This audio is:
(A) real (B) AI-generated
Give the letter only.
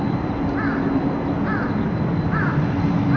A